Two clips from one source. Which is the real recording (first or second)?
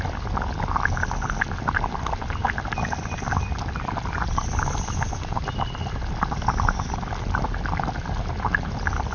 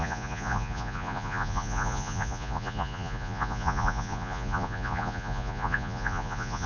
first